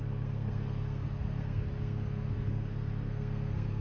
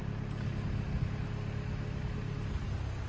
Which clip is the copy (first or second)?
first